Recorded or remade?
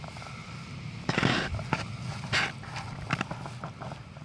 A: recorded